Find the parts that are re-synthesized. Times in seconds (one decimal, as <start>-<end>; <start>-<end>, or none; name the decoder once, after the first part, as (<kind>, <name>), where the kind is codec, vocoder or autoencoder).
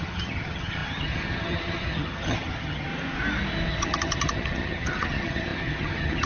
0.0-2.9 (vocoder, HiFi-GAN); 3.7-6.3